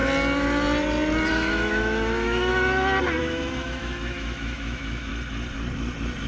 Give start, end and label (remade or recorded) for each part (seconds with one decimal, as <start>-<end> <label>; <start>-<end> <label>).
0.0-1.3 recorded; 1.3-2.5 remade; 2.5-3.2 recorded; 3.2-5.1 remade; 5.1-6.3 recorded